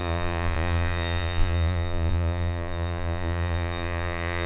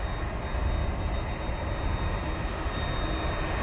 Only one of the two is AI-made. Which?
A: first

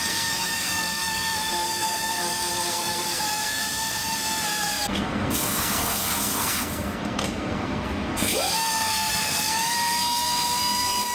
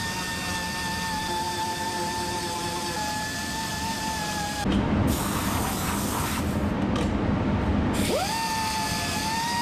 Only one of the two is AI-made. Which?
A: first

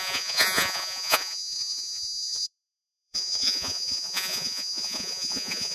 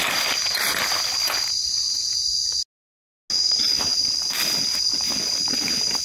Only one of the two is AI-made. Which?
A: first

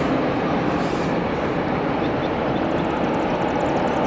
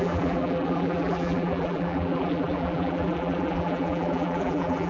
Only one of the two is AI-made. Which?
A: second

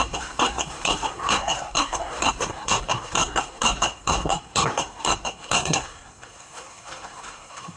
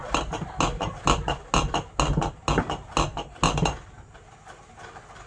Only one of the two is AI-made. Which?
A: first